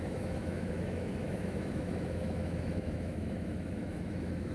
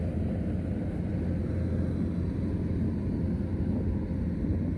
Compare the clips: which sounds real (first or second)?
second